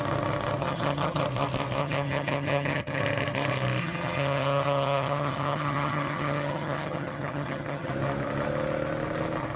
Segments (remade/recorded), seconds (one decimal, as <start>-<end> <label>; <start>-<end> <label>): 0.0-0.6 recorded; 0.6-1.2 remade; 1.2-1.8 recorded; 1.8-3.0 remade; 3.0-3.8 recorded; 3.8-7.9 remade; 7.9-9.6 recorded